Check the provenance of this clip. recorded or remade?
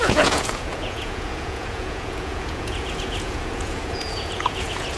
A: remade